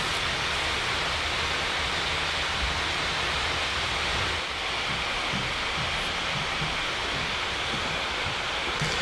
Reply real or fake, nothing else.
real